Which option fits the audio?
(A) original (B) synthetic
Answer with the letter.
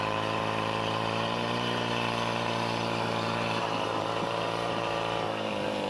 B